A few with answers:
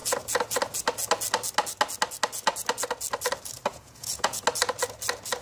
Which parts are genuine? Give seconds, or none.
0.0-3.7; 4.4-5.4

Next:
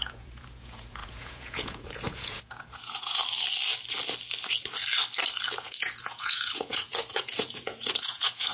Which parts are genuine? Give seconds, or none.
3.2-5.6

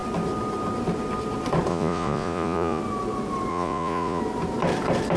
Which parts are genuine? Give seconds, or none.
0.0-1.7; 2.8-3.5; 4.2-5.2

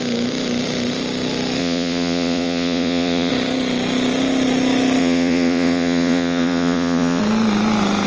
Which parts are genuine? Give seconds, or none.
0.0-1.6; 3.3-5.0; 7.2-8.1

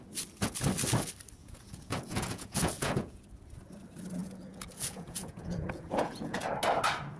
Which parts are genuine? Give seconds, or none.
0.0-1.4; 3.2-4.2; 6.4-7.2

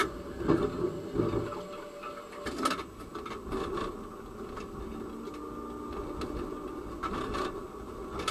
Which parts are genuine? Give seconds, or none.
0.0-8.3